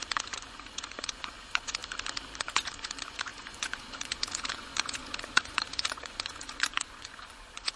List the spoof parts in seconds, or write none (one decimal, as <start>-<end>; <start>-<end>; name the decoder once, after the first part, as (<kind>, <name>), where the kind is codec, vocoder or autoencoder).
0.0-1.8 (vocoder, Vocos); 2.4-7.8